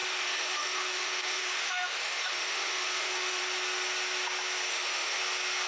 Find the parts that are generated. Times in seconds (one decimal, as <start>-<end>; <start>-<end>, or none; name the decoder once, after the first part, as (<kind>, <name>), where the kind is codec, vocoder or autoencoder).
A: 0.0-3.4 (autoencoder, DAC-VAE); 4.7-5.2